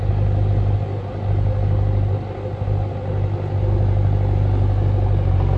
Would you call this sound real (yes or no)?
yes